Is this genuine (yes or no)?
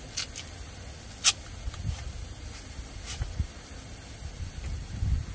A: yes